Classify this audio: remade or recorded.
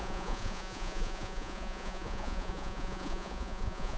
remade